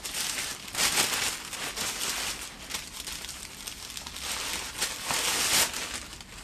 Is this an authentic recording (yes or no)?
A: yes